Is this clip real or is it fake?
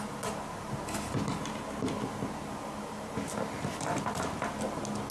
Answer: real